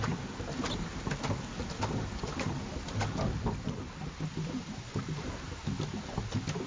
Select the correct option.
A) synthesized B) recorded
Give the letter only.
B